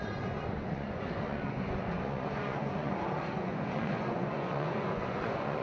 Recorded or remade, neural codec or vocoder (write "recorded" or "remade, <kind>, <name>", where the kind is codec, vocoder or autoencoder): remade, vocoder, Vocos